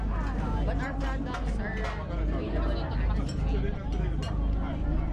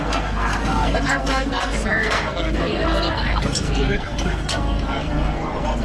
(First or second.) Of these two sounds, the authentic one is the first